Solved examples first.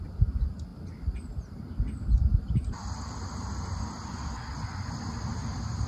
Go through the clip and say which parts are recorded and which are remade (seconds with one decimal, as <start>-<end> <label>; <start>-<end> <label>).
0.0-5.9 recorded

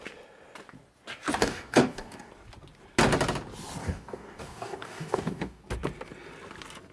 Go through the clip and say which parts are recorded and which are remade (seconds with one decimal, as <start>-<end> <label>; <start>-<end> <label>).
0.0-1.4 recorded; 1.4-2.3 remade; 2.3-3.8 recorded; 3.8-5.6 remade; 5.6-6.9 recorded

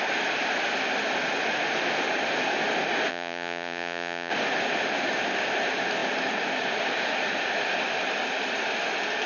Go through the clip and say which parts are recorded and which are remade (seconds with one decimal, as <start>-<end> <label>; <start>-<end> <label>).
0.0-3.1 recorded; 3.1-4.3 remade; 4.3-9.3 recorded